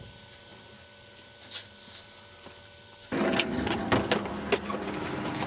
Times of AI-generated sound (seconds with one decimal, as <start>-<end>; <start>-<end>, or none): none